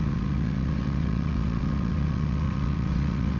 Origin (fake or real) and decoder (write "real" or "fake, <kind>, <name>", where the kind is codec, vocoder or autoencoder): fake, vocoder, WaveNeXt